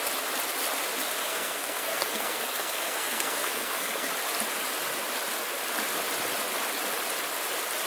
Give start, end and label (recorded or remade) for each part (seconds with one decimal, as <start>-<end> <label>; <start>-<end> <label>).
0.0-1.2 recorded; 1.2-4.1 remade; 4.1-7.9 recorded